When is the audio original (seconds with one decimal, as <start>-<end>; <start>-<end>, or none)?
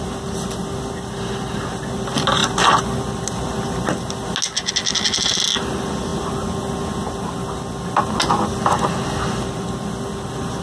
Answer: 0.0-10.6